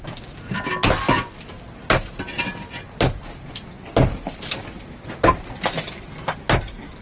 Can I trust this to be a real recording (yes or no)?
yes